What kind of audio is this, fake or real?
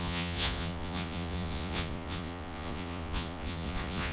fake